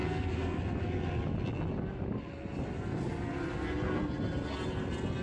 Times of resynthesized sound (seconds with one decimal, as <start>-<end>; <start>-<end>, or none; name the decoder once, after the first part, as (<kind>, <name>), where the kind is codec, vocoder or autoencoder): 0.0-0.6 (codec, SNAC)